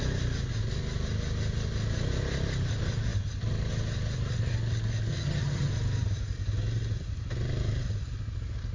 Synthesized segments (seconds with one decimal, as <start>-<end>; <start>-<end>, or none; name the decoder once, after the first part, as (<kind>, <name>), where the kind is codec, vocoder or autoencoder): 5.1-5.7 (vocoder, HiFi-GAN)